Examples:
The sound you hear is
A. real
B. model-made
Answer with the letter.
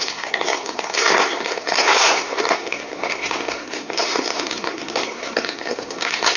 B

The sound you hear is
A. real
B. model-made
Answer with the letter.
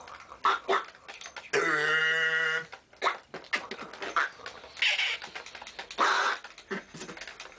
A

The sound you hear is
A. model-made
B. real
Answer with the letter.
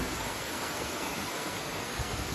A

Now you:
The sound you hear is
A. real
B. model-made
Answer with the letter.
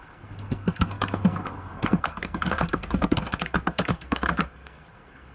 B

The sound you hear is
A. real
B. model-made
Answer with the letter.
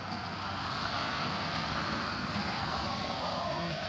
B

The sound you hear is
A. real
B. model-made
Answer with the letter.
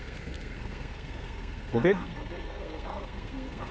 B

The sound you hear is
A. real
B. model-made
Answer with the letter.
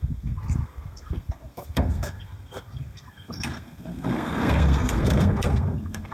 B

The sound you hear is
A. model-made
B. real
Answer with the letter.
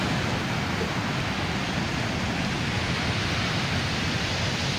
B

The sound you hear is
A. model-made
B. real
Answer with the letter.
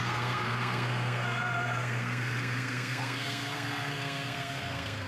A